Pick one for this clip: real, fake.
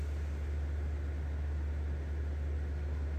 real